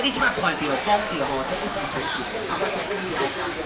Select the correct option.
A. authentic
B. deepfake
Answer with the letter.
B